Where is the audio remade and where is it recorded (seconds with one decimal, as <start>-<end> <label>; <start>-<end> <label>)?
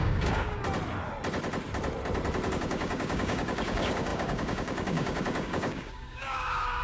0.0-0.6 remade; 0.6-2.5 recorded; 2.5-6.8 remade